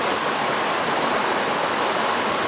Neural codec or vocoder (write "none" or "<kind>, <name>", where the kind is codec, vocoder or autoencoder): none